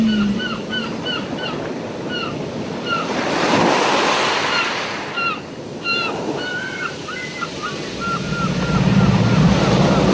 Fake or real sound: real